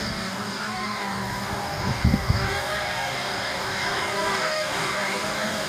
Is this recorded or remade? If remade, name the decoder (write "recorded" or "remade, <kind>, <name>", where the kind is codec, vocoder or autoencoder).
remade, codec, DAC